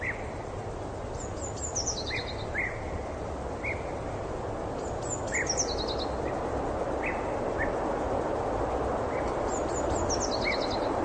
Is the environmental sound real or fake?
real